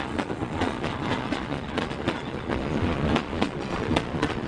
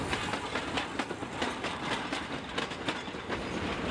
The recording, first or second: second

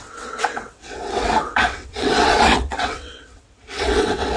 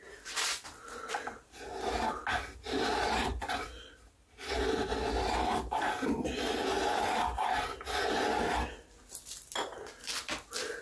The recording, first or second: second